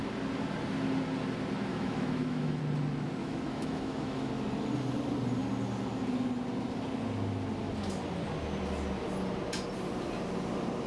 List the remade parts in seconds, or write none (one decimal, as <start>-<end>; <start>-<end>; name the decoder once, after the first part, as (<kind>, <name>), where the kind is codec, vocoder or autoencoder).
1.7-2.6 (autoencoder, DAC-VAE); 3.2-4.3